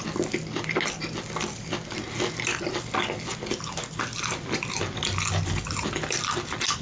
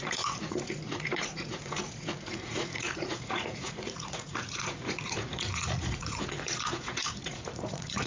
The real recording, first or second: first